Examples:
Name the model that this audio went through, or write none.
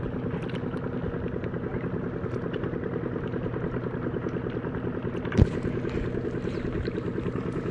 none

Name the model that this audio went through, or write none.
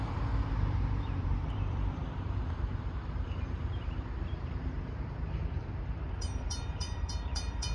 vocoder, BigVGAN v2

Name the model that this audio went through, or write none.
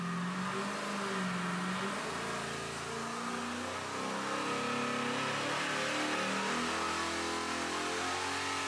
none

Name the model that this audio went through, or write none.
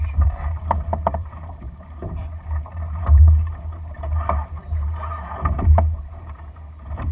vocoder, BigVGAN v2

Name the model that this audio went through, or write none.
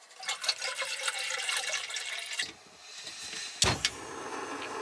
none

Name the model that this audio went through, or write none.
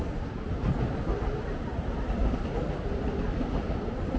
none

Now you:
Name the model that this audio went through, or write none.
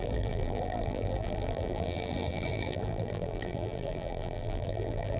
vocoder, BigVGAN v2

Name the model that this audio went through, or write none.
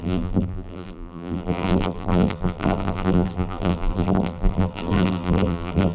vocoder, BigVGAN v2